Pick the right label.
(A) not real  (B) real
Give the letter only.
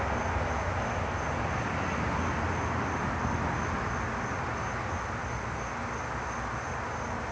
B